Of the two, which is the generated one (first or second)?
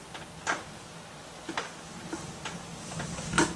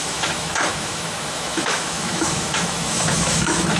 second